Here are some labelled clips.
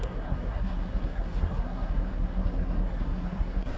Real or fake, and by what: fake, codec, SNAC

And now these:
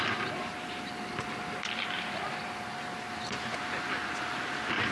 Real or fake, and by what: real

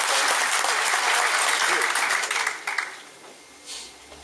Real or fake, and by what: real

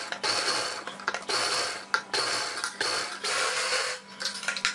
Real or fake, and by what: real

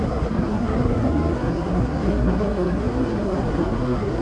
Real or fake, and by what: fake, codec, SNAC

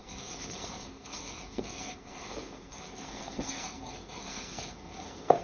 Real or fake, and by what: fake, codec, SNAC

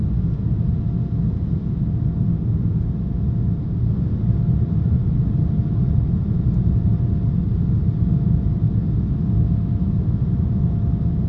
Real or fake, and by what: real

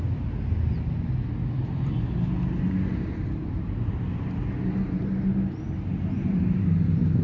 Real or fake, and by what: real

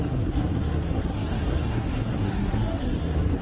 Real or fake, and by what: fake, codec, SNAC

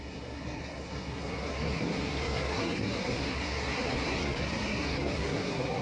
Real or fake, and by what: fake, codec, SNAC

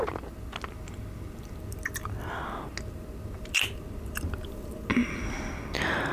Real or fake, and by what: real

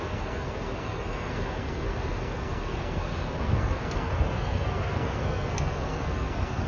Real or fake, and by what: fake, codec, SNAC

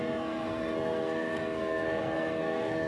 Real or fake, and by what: fake, codec, SNAC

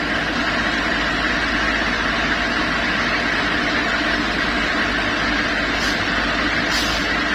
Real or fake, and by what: real